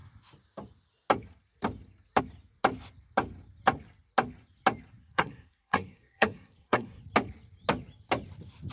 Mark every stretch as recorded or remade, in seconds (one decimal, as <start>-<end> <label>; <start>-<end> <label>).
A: 0.0-5.0 recorded; 5.0-7.0 remade; 7.0-8.7 recorded

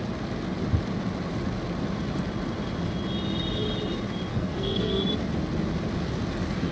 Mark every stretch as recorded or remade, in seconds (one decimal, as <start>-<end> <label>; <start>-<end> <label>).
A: 0.0-4.3 recorded; 4.3-5.0 remade; 5.0-6.7 recorded

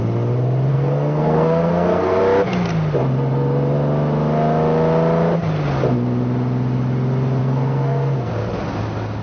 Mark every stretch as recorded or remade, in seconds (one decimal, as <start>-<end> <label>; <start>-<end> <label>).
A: 0.0-0.7 recorded; 0.7-2.2 remade; 2.2-7.4 recorded; 7.4-8.3 remade; 8.3-9.2 recorded